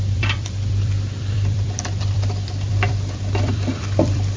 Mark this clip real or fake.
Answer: fake